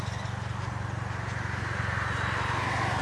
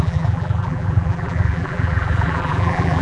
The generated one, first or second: second